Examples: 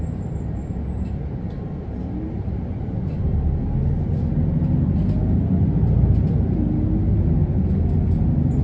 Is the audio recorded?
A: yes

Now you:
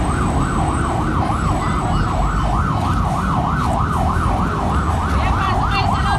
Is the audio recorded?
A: yes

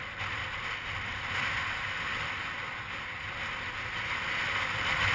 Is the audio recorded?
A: yes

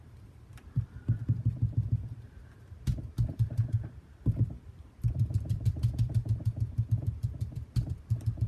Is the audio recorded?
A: no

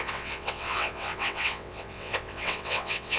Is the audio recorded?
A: no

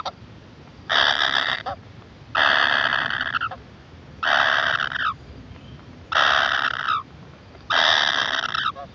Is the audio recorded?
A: yes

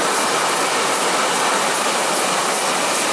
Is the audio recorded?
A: yes